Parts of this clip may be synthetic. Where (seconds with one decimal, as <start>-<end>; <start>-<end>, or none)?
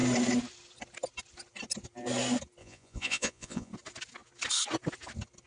2.6-3.7